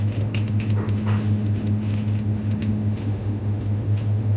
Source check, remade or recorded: remade